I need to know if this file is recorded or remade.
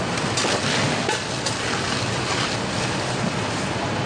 recorded